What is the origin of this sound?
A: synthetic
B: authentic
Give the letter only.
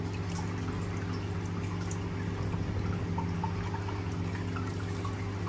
B